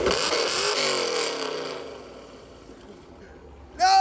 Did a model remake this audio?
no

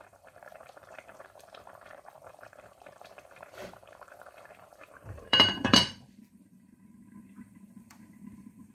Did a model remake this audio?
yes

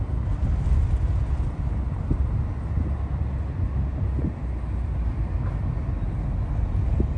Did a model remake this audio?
no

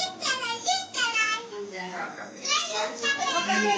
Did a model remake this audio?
no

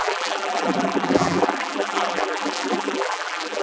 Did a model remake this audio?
yes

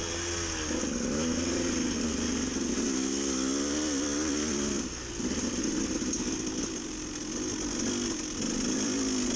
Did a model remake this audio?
no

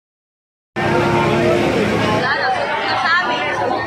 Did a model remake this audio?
no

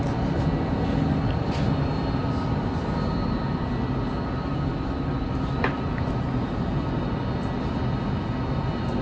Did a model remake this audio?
no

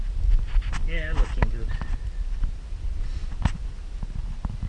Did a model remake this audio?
no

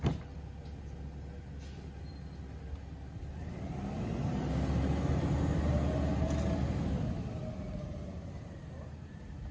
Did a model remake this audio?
no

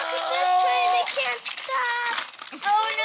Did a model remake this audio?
no